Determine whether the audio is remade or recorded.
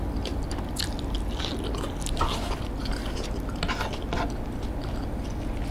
recorded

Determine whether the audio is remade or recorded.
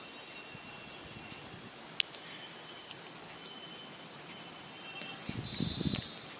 recorded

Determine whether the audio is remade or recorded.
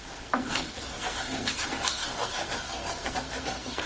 remade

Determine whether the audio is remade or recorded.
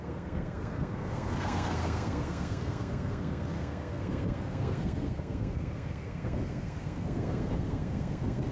remade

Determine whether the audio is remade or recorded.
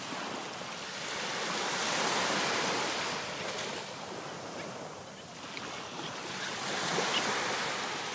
recorded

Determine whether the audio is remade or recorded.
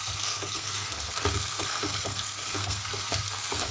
remade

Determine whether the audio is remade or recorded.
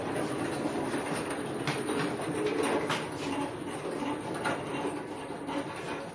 recorded